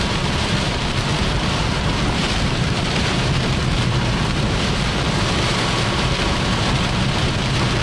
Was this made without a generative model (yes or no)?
no